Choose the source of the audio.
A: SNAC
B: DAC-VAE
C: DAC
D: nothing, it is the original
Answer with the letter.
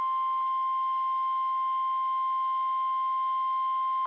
D